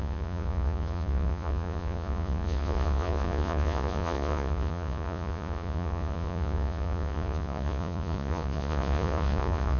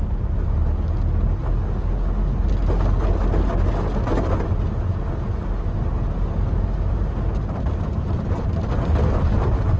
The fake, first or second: first